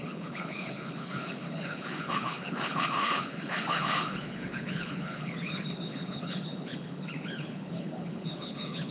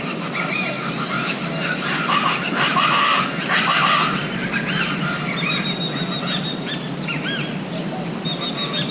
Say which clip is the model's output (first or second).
first